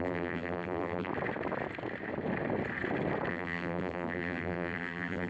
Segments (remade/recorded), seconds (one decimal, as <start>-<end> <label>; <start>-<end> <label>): 0.0-1.1 remade; 1.1-3.3 recorded; 3.3-5.3 remade